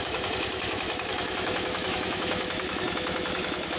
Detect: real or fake fake